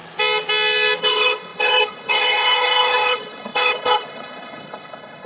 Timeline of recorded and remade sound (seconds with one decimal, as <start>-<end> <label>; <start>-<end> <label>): 0.0-1.0 recorded; 1.0-5.3 remade